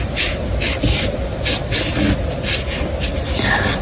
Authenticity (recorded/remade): recorded